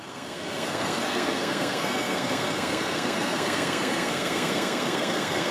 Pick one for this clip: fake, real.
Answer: fake